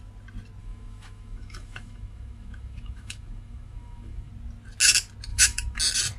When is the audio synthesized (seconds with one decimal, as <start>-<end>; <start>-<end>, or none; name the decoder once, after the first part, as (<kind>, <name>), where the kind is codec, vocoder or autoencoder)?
0.6-4.3 (autoencoder, DAC-VAE); 5.3-5.8